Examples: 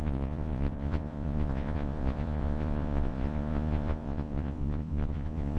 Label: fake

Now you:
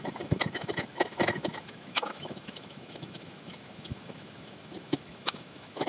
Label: fake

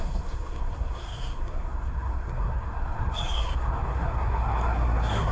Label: fake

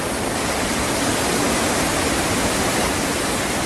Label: real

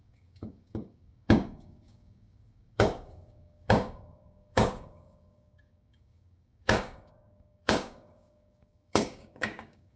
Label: fake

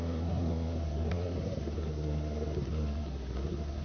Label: fake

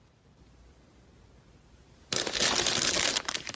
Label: fake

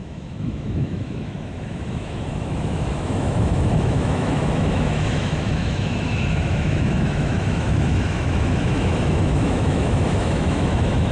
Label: fake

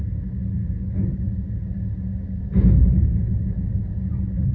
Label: real